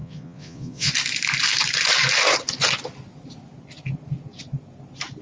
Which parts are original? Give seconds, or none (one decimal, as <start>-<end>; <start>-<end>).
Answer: 0.9-5.2

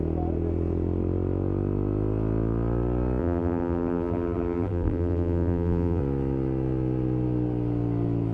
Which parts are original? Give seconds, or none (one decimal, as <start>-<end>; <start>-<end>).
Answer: 0.0-3.2; 6.0-8.3

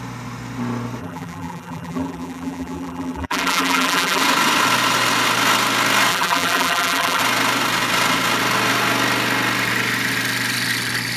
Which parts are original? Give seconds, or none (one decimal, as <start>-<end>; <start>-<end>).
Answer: 0.0-1.0; 4.2-6.1; 7.2-11.2

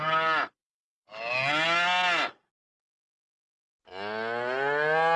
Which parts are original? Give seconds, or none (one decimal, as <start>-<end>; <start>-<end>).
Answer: 0.0-5.2

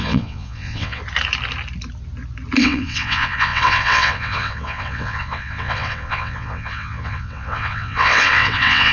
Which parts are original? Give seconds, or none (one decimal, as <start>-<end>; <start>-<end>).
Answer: 1.0-2.6

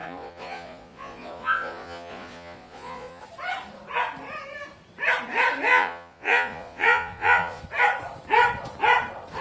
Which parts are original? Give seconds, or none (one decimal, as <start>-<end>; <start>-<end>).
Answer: 3.2-5.7; 7.6-9.4

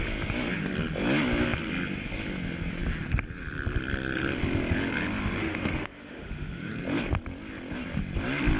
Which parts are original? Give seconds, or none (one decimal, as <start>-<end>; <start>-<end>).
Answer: 0.0-5.4; 6.7-8.6

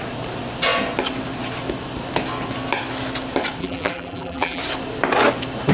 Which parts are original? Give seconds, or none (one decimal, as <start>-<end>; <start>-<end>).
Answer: 0.0-3.6; 4.6-5.7